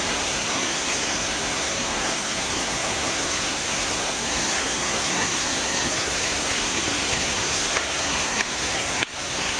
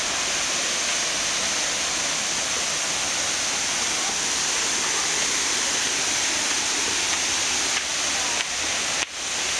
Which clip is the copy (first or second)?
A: first